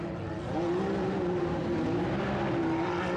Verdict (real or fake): real